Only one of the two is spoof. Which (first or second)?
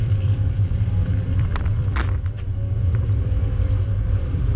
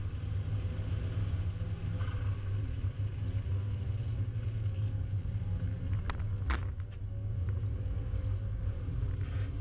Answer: first